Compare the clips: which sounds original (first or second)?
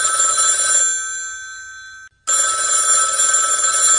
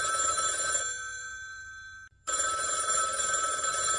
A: first